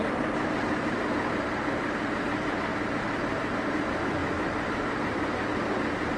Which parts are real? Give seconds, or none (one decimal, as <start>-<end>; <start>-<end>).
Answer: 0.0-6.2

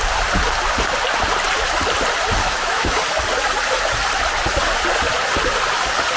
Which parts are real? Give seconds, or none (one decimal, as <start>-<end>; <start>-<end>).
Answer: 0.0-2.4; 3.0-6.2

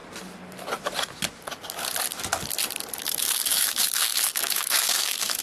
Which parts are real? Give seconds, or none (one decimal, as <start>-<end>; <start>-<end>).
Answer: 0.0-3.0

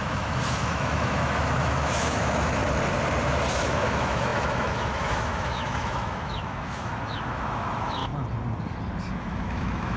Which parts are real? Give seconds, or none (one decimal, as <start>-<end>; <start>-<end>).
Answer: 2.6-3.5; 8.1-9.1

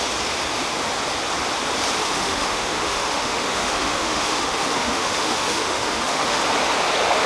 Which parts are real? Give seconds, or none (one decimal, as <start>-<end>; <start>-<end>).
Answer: 0.0-2.0; 6.4-7.3